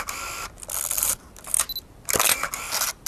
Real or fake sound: real